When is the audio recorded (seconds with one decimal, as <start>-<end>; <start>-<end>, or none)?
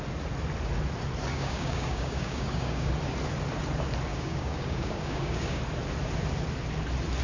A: 0.0-1.3; 2.9-4.1; 5.6-7.2